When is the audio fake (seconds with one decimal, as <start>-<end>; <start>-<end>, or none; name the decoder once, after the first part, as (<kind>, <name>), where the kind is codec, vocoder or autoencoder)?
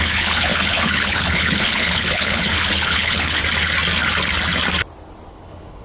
0.0-3.4 (codec, HILCodec); 5.3-5.8